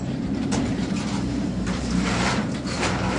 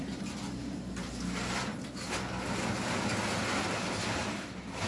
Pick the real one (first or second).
second